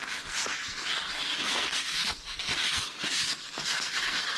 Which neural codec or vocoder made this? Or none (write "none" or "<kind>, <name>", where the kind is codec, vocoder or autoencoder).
codec, SNAC